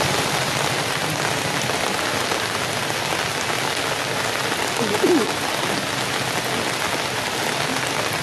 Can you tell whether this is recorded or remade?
recorded